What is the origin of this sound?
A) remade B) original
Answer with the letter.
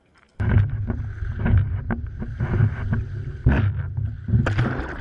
B